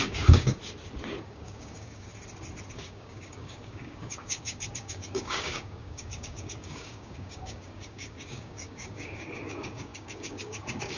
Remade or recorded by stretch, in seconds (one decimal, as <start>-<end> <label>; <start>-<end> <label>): 0.0-0.6 remade; 0.6-1.2 recorded; 1.2-2.1 remade; 2.1-2.7 recorded; 2.7-11.0 remade